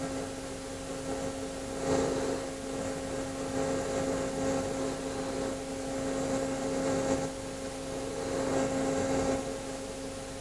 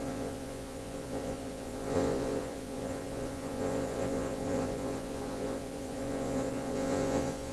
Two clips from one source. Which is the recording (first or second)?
first